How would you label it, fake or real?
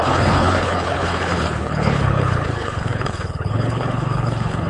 fake